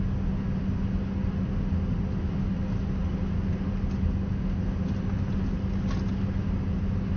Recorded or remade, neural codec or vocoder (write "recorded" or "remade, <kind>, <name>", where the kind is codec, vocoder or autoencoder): recorded